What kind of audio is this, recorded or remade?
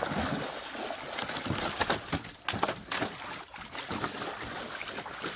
recorded